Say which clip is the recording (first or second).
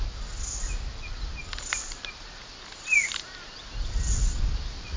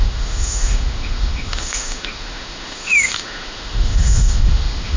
first